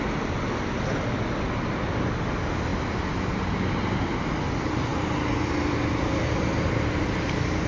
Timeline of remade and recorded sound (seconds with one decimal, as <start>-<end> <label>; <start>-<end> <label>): 0.0-7.7 recorded